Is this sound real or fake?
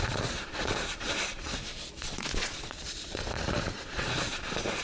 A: fake